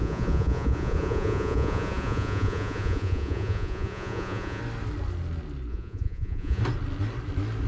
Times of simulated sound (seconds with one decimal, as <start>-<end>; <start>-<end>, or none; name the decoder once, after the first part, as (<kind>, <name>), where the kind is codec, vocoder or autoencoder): 0.0-4.6 (vocoder, Vocos); 5.7-6.6